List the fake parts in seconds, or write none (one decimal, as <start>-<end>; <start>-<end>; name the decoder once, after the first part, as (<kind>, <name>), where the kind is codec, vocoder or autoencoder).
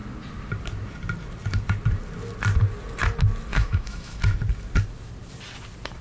3.5-4.2 (autoencoder, DAC-VAE)